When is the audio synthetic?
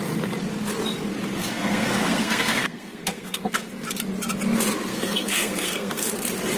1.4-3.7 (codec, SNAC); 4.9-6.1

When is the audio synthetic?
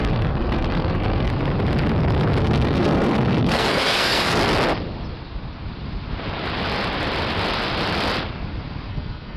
0.0-1.3 (codec, SNAC); 2.4-4.4; 8.9-9.4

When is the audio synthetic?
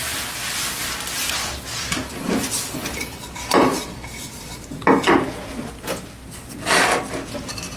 3.7-5.5 (vocoder, BigVGAN v2)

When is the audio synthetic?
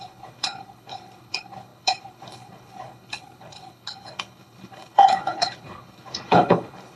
0.0-7.0 (codec, HILCodec)